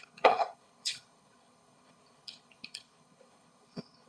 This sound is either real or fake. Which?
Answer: fake